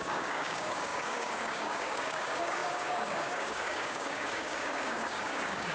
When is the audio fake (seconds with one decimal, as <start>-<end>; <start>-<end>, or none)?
0.0-5.7

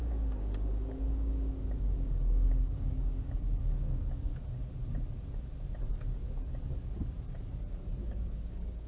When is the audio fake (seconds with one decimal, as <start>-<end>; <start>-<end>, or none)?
0.0-4.3; 8.0-8.9